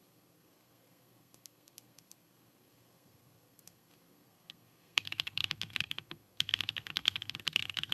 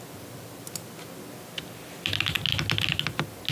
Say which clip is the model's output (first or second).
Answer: first